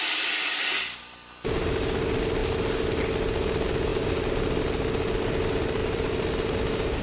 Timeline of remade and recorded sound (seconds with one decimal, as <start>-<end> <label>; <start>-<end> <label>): 0.0-5.8 recorded; 5.8-7.0 remade